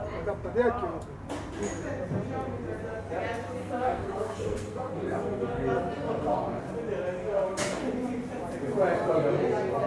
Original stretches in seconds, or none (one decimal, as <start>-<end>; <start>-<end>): 0.0-3.6; 6.6-7.2; 7.8-9.9